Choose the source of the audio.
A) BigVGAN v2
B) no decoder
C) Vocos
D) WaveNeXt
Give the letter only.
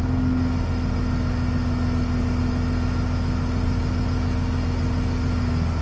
B